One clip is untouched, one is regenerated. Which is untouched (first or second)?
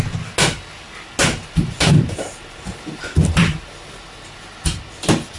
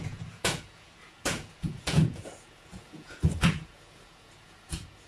first